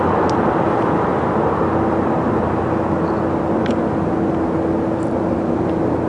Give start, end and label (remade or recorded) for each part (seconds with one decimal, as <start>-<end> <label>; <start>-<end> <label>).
0.0-6.1 recorded